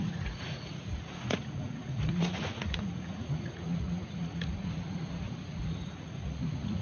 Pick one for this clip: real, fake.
fake